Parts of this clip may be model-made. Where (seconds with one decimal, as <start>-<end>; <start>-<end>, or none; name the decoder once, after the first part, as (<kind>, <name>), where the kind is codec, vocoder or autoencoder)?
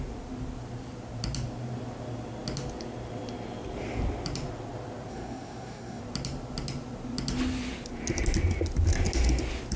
5.1-6.0 (codec, SNAC)